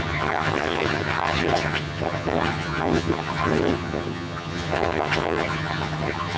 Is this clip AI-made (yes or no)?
yes